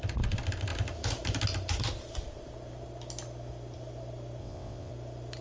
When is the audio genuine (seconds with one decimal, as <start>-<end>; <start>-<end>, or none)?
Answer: 0.0-4.4; 4.9-5.4